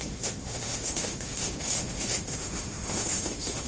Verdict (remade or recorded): remade